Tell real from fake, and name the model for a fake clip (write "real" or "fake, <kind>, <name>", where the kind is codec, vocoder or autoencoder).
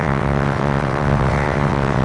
fake, vocoder, WaveNeXt